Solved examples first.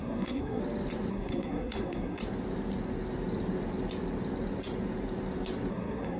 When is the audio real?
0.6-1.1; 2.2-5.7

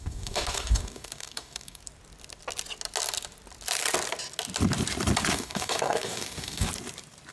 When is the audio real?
1.8-5.3; 6.7-7.3

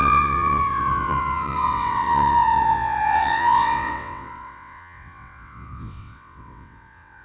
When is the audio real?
none

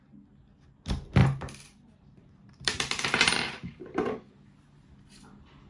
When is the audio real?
0.0-1.2; 4.3-5.7

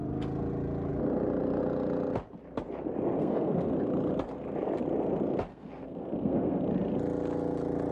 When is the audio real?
0.0-3.2; 3.7-5.5; 6.6-7.9